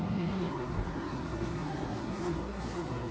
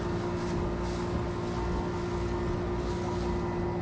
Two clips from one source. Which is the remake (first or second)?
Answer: first